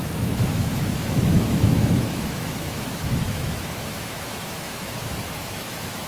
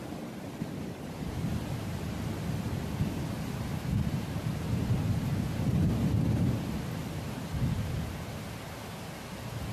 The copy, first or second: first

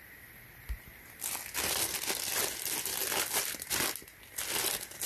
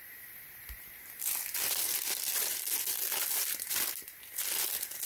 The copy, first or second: second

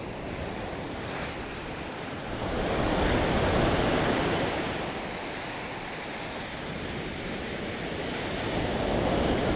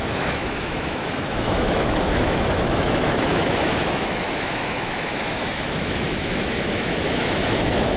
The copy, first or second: second